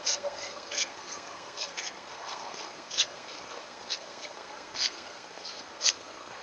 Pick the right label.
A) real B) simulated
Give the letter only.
B